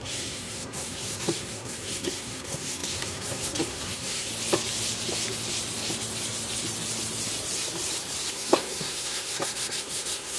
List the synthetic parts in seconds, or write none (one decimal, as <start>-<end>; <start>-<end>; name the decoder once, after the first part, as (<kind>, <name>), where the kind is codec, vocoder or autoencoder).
0.0-4.3 (codec, SNAC); 8.3-10.4